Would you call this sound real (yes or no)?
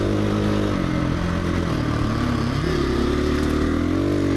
yes